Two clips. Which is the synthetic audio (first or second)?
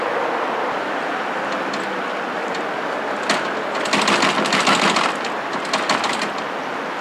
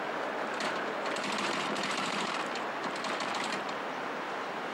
second